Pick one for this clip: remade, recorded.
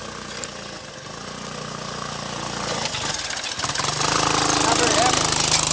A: recorded